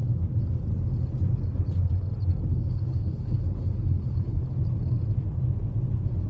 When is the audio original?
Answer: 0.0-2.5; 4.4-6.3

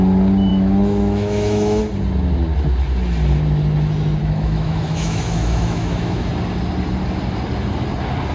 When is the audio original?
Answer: 0.0-0.5; 1.8-4.2; 6.3-8.3

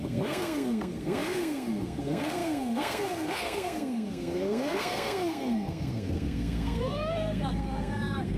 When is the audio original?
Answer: none

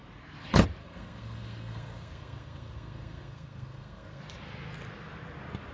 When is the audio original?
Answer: 0.0-0.8; 4.2-5.7

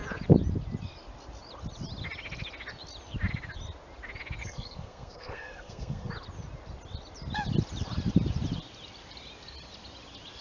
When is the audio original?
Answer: 0.0-4.4; 6.1-10.4

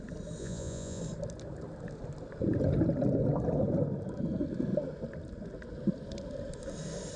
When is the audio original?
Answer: 0.0-0.4; 1.0-7.2